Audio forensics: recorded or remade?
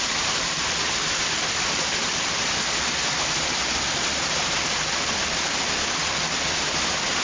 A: remade